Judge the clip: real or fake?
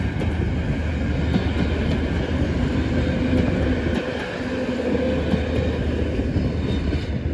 real